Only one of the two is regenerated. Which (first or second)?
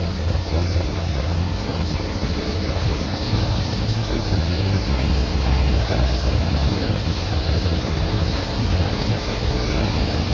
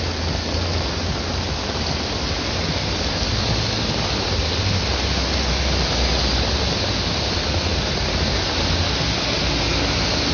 first